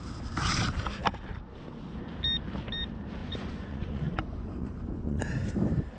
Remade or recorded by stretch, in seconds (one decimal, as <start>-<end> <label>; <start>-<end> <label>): 0.0-3.2 recorded; 3.2-5.2 remade; 5.2-6.0 recorded